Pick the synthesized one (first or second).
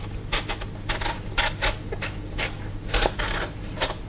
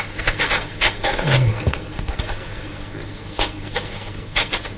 second